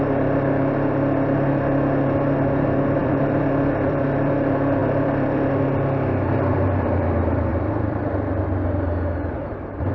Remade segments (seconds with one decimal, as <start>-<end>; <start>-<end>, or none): 3.0-4.3; 4.8-5.5; 7.5-8.0